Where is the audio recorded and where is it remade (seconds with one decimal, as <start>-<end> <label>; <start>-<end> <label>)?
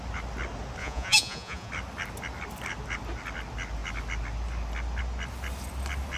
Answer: 0.0-0.8 recorded; 0.8-1.7 remade; 1.7-6.2 recorded